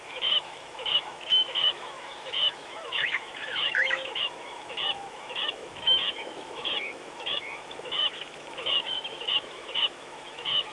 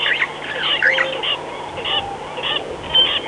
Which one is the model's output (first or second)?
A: first